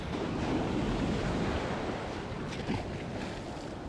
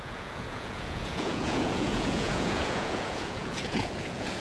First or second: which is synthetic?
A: second